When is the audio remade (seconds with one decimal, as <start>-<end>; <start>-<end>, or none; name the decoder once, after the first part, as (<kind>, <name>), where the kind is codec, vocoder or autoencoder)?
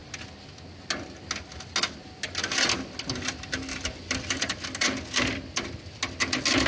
3.7-4.3 (vocoder, BigVGAN v2)